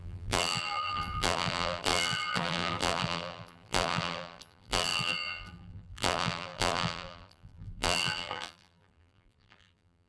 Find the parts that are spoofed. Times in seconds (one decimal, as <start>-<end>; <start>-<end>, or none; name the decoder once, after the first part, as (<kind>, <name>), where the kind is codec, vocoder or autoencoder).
0.0-10.1 (vocoder, BigVGAN v2)